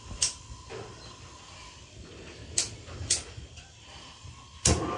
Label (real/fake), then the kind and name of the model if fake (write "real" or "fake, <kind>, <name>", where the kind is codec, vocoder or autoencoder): real